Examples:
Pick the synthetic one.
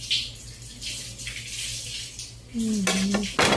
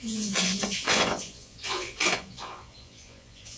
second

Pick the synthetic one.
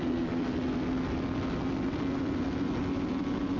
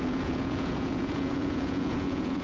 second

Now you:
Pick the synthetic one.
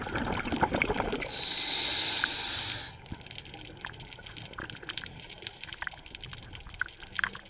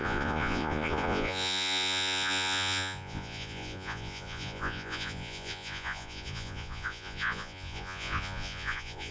second